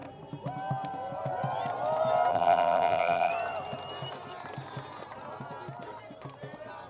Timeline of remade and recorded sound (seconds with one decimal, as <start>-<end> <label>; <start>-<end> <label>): 0.0-2.3 recorded; 2.3-3.3 remade; 3.3-6.9 recorded